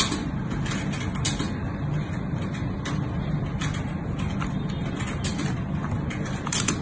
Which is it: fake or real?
real